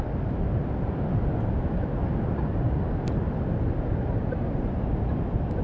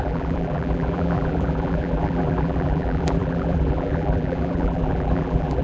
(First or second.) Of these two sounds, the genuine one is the first